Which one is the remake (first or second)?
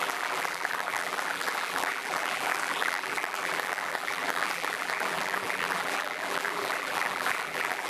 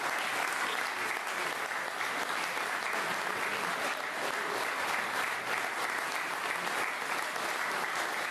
first